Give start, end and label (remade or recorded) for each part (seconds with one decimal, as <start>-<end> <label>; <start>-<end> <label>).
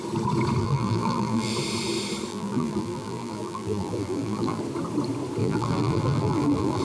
0.0-0.6 recorded; 0.6-1.5 remade; 1.5-2.3 recorded; 2.3-4.6 remade; 4.6-5.4 recorded; 5.4-6.8 remade